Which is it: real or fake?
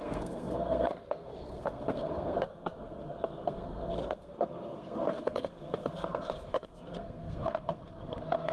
fake